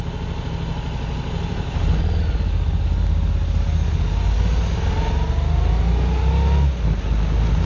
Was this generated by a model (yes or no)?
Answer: no